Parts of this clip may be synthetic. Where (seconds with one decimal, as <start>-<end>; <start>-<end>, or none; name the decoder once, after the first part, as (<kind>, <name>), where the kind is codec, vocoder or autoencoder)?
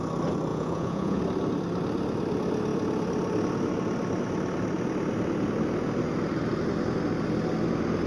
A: 0.5-1.2 (vocoder, Vocos)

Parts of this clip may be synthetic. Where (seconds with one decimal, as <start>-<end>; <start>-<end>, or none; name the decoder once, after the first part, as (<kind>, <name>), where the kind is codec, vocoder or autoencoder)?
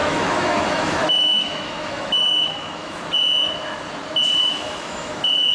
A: 0.0-3.0 (autoencoder, DAC-VAE); 4.4-5.5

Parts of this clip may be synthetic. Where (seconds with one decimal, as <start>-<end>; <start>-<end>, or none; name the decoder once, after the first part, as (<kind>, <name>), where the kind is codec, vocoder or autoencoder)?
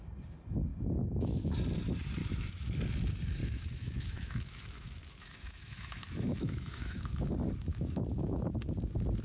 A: 0.7-1.5 (autoencoder, DAC-VAE); 2.2-2.7; 3.4-7.3; 7.7-8.6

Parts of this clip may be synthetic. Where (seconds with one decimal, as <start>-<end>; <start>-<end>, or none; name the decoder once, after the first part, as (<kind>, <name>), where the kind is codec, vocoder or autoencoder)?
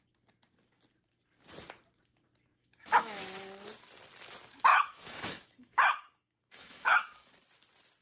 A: 2.5-3.2 (autoencoder, DAC-VAE); 4.7-7.3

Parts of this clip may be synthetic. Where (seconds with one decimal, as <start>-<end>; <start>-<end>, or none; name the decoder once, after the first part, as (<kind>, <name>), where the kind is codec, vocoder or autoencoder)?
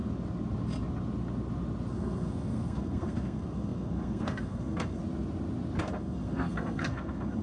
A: 1.9-5.0 (codec, SNAC); 5.8-7.4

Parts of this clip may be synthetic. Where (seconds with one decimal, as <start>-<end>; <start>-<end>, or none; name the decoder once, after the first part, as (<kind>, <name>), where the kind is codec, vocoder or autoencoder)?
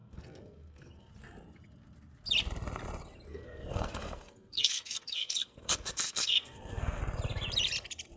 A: 0.0-1.1 (codec, SNAC); 3.3-7.0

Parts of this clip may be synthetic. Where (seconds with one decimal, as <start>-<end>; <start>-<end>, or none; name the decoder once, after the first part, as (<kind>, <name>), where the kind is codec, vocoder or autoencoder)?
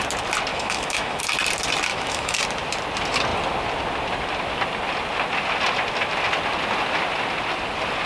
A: 0.5-1.2 (autoencoder, DAC-VAE); 1.9-2.4